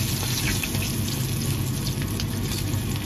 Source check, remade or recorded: recorded